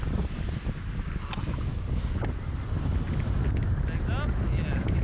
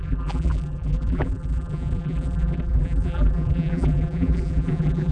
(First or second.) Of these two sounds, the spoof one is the second